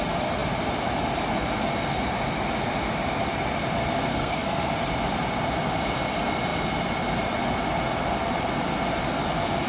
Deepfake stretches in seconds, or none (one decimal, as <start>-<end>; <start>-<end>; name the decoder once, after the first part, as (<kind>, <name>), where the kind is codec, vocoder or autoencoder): 4.1-4.7 (codec, SNAC)